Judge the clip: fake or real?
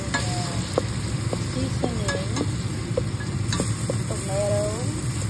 real